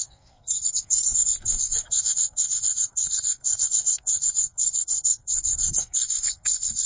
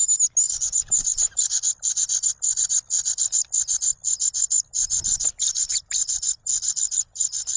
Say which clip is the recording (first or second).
second